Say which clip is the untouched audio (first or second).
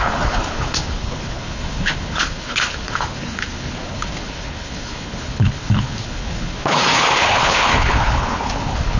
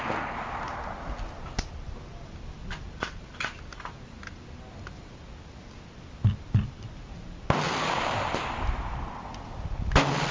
second